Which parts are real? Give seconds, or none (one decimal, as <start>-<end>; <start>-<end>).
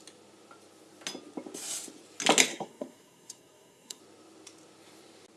0.0-2.5; 4.0-5.4